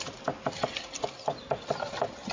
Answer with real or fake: real